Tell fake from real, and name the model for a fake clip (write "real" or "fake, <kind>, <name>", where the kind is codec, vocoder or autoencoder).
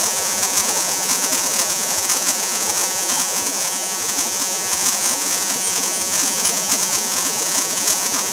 fake, vocoder, Vocos